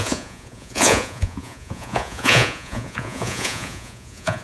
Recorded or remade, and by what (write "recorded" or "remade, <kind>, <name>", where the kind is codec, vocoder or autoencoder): remade, vocoder, Vocos